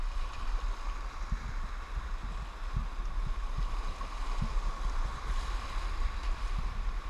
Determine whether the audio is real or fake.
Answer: real